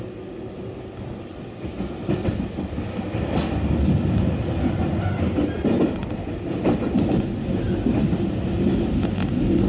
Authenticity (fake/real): real